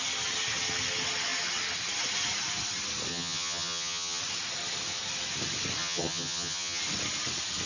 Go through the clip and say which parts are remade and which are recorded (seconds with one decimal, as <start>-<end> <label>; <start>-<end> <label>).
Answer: 0.0-3.1 recorded; 3.1-4.2 remade; 4.2-5.8 recorded; 5.8-6.8 remade; 6.8-7.7 recorded